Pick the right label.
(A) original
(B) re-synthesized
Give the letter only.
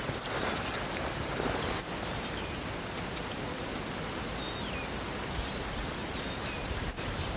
A